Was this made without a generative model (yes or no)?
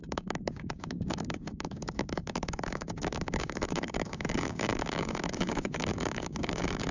no